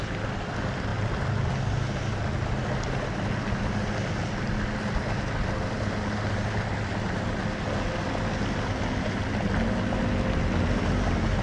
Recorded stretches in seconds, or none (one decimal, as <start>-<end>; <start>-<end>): 0.0-11.4